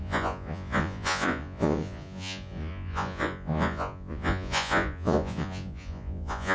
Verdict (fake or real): fake